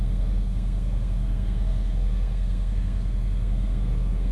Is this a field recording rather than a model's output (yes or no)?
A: no